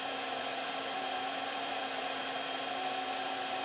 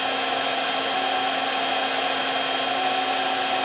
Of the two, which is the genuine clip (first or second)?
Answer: second